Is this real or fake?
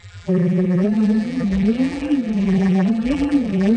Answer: fake